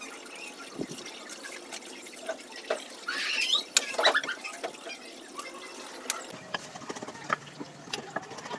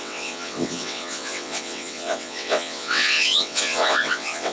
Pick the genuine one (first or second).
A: first